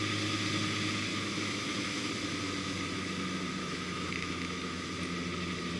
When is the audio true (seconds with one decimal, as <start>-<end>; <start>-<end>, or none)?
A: 0.0-1.1; 2.1-3.6; 4.9-5.8